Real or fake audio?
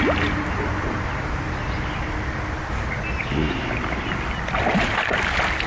real